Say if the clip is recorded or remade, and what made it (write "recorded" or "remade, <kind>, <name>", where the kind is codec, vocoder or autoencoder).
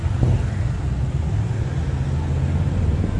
recorded